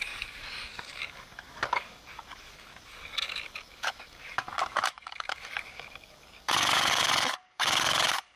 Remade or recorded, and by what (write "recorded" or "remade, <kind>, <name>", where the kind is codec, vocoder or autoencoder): remade, codec, DAC